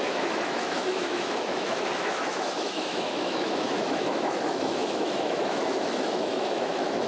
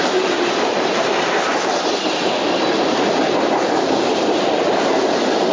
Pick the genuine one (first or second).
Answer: second